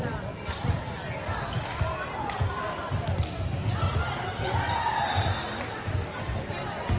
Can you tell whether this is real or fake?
real